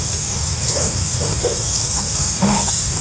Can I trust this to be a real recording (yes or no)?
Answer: no